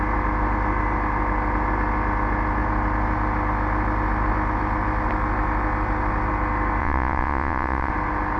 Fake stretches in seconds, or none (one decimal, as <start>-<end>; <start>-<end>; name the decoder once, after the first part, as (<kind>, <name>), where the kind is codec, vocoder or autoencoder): 6.8-7.9 (vocoder, Vocos)